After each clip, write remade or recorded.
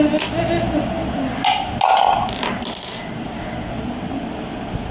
recorded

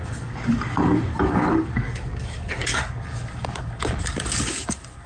remade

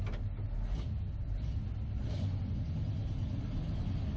recorded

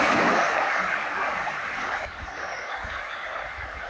remade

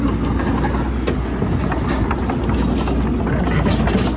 recorded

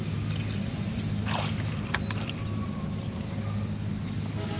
recorded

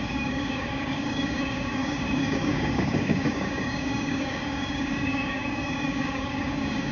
remade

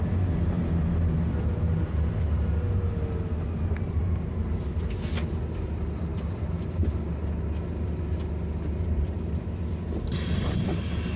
recorded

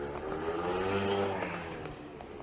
recorded